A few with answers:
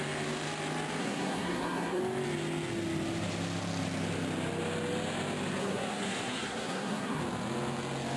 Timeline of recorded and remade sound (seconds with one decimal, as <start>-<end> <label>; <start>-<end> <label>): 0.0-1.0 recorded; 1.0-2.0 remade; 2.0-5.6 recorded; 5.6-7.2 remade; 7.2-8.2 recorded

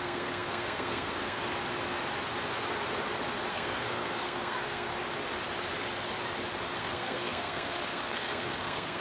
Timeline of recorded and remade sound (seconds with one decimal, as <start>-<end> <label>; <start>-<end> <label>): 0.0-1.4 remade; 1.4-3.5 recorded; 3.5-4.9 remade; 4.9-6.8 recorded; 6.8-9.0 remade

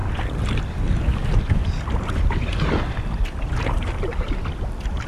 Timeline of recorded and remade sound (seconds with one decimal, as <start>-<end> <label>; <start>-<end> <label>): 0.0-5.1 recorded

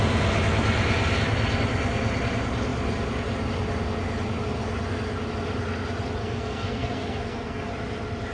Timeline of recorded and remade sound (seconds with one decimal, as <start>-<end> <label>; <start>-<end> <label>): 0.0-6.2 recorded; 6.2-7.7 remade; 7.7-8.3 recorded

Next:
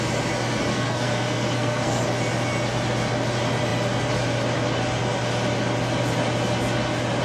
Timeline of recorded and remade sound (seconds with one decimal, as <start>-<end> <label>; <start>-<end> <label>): 0.0-0.7 recorded; 0.7-2.0 remade; 2.0-7.2 recorded

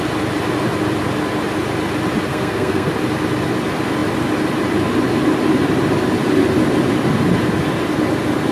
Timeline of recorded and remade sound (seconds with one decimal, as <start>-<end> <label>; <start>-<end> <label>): 0.0-2.3 recorded; 2.3-2.9 remade; 2.9-8.5 recorded